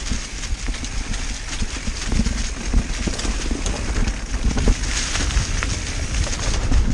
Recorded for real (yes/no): yes